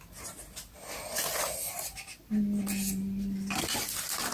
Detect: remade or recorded recorded